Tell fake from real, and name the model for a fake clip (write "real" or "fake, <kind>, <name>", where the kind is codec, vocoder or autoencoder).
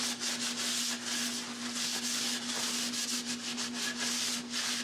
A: real